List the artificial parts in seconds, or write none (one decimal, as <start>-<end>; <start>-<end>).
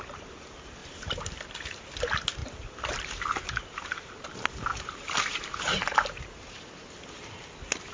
0.8-1.9; 2.4-4.2; 4.7-6.7